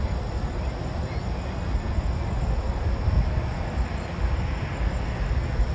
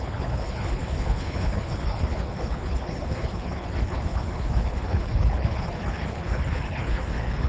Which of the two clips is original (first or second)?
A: first